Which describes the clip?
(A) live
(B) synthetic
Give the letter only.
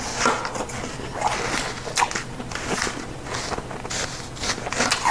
A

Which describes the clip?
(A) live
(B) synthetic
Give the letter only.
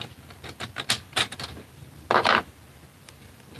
A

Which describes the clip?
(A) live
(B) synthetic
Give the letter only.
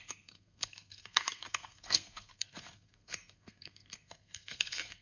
B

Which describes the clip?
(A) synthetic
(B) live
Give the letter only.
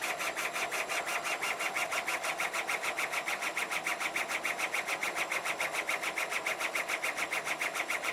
B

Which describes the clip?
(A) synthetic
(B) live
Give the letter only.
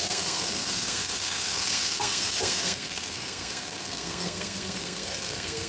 A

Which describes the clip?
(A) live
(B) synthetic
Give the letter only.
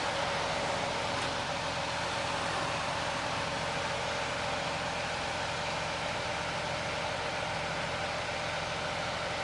A